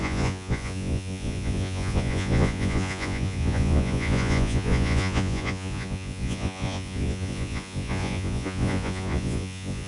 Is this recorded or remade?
remade